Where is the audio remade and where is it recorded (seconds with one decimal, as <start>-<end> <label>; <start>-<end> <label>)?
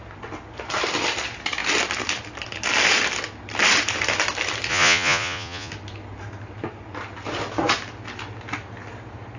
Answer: 0.0-4.7 recorded; 4.7-5.7 remade; 5.7-9.4 recorded